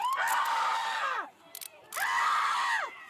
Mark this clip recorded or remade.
recorded